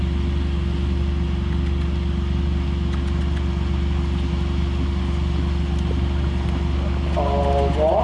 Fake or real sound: real